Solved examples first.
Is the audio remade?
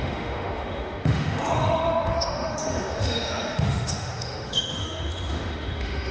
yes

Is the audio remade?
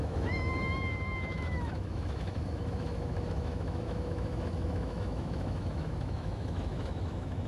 yes